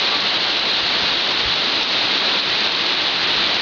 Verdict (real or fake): real